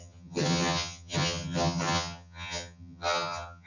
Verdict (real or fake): fake